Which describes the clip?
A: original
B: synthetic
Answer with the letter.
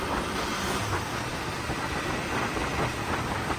A